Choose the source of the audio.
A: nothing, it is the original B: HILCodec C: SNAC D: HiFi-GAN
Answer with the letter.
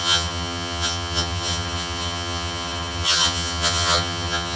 D